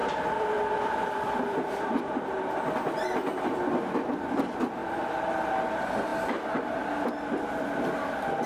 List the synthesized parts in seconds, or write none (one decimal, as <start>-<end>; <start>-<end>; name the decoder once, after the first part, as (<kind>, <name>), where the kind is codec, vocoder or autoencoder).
0.0-3.4 (vocoder, BigVGAN v2); 4.8-5.3

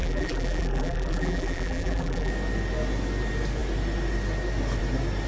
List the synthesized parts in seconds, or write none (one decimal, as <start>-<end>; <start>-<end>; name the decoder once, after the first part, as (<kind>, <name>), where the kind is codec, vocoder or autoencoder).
0.0-2.3 (vocoder, BigVGAN v2)